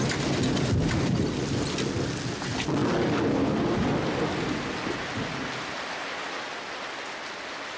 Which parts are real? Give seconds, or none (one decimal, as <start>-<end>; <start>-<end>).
0.0-7.8